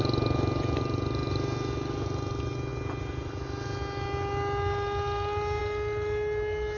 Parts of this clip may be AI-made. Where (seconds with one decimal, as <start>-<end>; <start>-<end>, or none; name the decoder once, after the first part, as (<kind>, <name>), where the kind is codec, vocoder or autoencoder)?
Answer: none